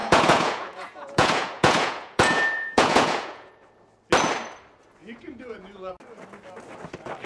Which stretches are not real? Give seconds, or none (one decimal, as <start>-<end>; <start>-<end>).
0.0-3.5; 5.0-5.9